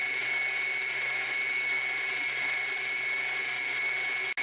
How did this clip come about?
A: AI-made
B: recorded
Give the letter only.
B